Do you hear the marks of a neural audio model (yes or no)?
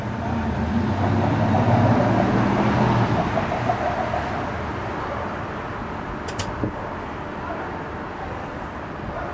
no